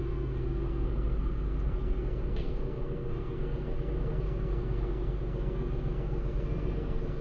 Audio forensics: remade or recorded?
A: remade